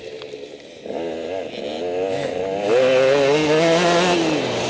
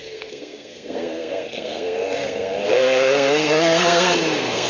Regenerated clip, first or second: second